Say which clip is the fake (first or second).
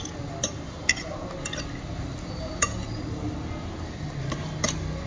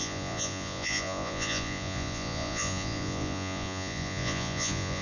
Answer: second